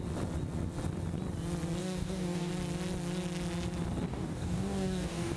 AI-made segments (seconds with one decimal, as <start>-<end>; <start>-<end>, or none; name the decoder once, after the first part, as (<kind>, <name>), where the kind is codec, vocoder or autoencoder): 1.8-2.5 (codec, DAC); 4.1-5.4